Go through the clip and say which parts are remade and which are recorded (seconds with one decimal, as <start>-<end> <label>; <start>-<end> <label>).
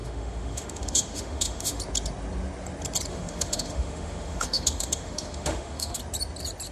0.0-1.8 remade; 1.8-3.1 recorded; 3.1-6.0 remade; 6.0-6.7 recorded